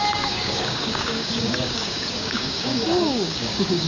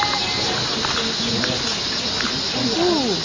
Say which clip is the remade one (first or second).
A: first